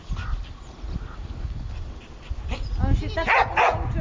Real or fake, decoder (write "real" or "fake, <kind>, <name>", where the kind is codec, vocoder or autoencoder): real